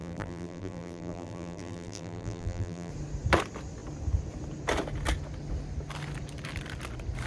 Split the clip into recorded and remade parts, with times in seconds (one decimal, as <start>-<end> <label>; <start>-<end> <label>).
0.0-2.9 remade; 2.9-7.3 recorded